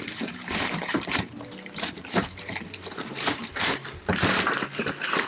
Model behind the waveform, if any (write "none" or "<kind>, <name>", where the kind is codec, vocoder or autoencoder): vocoder, BigVGAN v2